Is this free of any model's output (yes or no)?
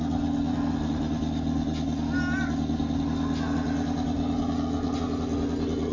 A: yes